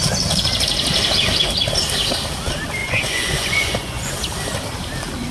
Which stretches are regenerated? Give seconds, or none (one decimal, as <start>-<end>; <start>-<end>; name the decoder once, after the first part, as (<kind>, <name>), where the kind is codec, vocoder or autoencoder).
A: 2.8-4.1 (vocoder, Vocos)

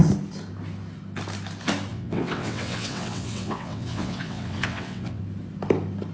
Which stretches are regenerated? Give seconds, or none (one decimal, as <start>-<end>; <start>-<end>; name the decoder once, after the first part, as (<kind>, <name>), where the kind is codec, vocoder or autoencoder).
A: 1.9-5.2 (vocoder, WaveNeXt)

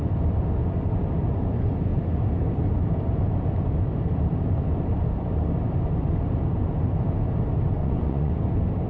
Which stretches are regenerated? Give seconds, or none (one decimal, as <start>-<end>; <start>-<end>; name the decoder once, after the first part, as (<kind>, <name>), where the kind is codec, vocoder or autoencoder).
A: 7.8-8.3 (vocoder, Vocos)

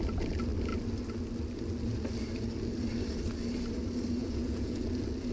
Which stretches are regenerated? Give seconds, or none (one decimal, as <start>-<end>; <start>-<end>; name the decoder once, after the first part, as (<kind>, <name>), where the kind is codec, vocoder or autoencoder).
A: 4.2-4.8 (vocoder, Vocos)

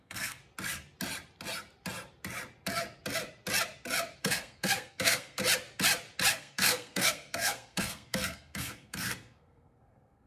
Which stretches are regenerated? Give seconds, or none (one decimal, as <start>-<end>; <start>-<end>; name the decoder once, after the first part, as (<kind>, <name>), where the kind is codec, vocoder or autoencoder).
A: 0.0-0.4 (codec, SNAC); 4.2-5.4; 6.3-10.3